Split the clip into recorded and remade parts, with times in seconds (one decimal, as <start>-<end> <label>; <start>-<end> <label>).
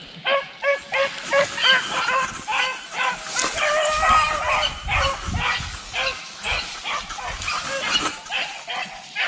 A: 0.0-9.3 recorded